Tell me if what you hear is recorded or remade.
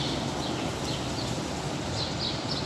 recorded